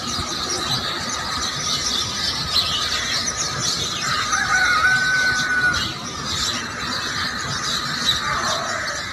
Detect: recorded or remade recorded